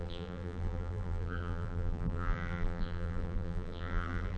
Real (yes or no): no